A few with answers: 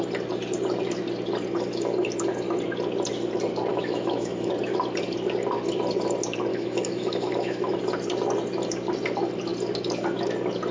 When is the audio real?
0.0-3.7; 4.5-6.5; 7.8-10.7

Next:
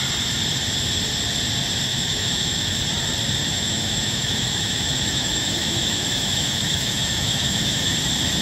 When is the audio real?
0.0-1.9; 2.8-3.5; 7.9-8.4

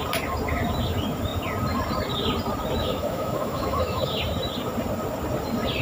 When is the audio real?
0.0-2.8; 4.2-5.8

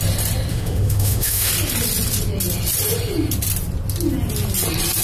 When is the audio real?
0.0-0.5; 1.5-5.0

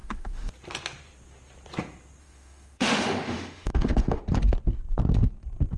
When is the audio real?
0.5-2.2; 4.2-5.8

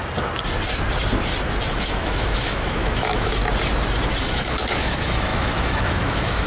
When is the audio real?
0.0-1.8; 3.4-4.2

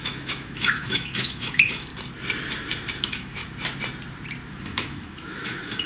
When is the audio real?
1.9-3.0; 3.4-4.5